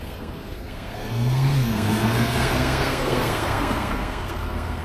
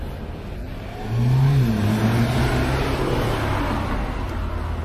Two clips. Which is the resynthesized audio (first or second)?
first